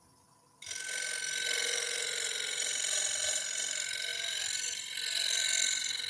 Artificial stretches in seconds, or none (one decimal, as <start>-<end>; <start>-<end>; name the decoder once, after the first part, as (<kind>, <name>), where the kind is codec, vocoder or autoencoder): none